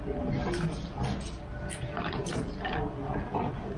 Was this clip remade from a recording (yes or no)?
no